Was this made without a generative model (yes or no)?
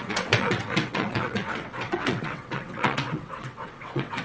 no